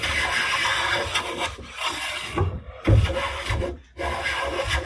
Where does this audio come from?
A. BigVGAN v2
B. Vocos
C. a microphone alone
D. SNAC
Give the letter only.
C